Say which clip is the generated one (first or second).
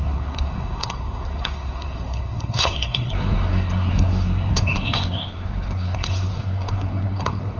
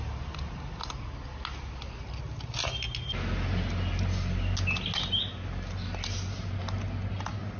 first